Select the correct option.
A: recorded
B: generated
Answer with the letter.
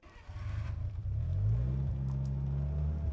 A